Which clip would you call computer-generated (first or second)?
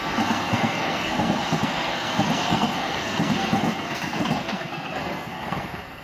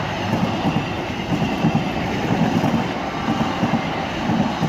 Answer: first